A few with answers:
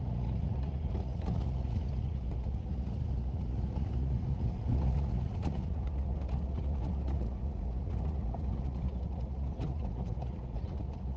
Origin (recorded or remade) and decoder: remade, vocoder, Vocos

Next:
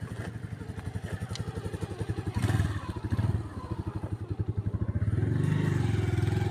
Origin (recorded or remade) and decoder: recorded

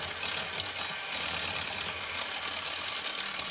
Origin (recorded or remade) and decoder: recorded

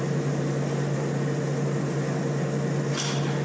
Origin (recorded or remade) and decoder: recorded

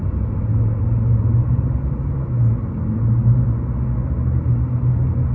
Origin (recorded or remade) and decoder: recorded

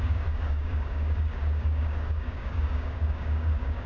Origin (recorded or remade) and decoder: remade, codec, DAC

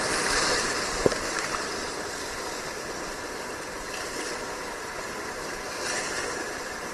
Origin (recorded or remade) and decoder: remade, vocoder, BigVGAN v2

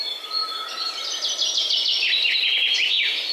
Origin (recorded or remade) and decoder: recorded